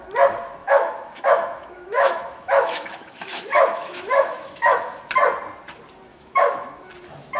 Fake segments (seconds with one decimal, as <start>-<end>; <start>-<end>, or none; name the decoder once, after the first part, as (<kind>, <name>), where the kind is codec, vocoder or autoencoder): 0.6-5.0 (autoencoder, DAC-VAE); 6.1-6.9